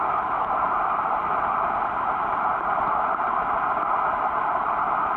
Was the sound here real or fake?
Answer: real